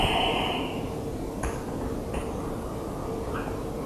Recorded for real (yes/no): yes